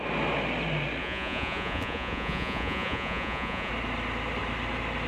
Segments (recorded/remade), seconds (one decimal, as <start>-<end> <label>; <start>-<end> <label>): 0.0-1.0 recorded; 1.0-3.7 remade; 3.7-5.1 recorded